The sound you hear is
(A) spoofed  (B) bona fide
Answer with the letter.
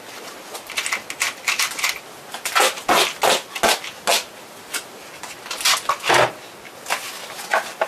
B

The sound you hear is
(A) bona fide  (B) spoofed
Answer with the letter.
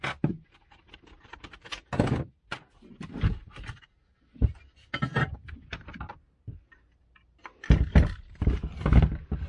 A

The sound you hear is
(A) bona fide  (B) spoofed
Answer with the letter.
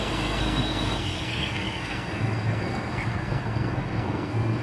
B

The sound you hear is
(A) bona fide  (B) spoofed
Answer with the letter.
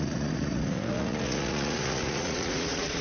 B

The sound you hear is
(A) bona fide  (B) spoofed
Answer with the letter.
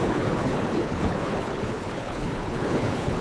B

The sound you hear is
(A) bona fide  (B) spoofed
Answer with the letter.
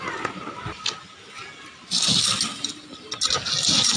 A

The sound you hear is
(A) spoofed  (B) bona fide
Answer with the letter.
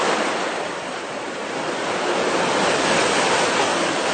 A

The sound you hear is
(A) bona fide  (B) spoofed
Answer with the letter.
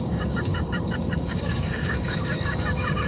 B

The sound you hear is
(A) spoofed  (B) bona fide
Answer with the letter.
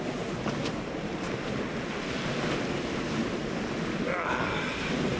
B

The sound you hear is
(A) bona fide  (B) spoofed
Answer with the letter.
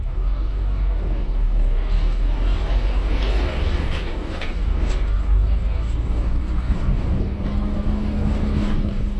B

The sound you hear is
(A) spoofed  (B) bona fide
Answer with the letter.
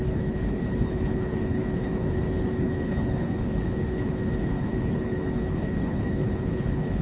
A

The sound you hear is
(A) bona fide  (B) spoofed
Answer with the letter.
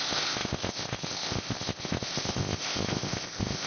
B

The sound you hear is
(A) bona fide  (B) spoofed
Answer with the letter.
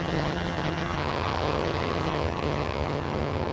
B